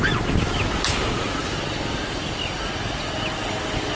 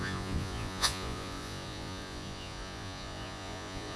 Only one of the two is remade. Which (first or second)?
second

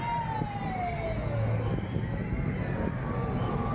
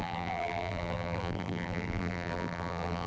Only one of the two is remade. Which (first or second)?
second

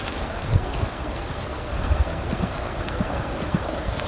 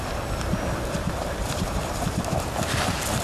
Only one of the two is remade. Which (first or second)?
first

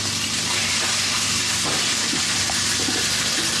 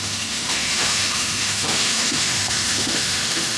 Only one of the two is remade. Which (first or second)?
second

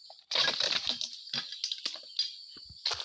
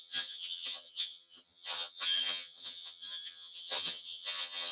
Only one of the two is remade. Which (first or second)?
second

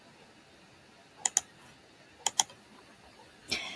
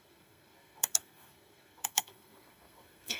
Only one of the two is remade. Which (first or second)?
second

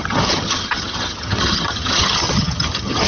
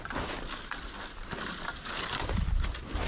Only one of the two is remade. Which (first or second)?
first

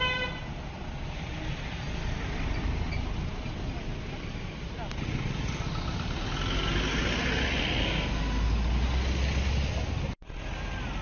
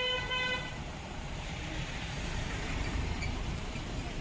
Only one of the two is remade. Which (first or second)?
second